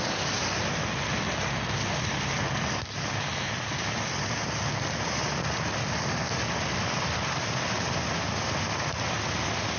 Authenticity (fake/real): real